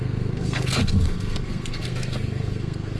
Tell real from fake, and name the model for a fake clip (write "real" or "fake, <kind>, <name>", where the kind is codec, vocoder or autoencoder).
fake, codec, SNAC